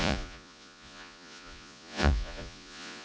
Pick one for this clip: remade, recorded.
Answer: remade